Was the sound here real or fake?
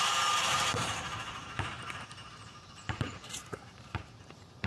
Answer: fake